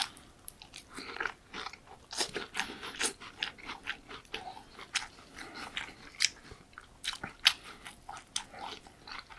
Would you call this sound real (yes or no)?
yes